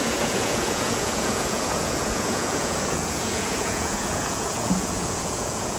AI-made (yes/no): yes